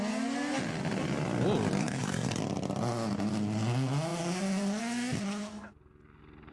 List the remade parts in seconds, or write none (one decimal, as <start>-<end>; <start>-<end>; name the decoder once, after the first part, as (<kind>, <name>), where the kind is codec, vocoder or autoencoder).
1.8-2.4 (codec, SNAC)